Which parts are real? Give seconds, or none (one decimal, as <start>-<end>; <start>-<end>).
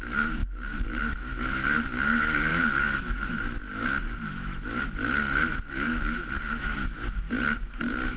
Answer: none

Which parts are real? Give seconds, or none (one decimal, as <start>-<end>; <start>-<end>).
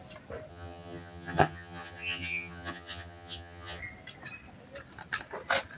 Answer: 0.0-0.5; 3.8-5.8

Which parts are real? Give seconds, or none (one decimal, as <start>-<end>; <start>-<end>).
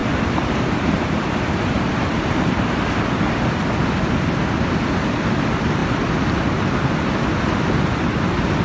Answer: 2.8-8.6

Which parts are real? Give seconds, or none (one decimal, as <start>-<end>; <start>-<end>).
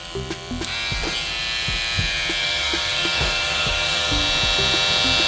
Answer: 0.0-2.4; 4.2-5.3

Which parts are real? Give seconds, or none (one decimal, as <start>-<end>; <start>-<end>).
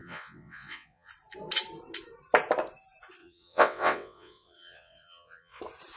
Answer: 1.1-3.2; 5.6-6.0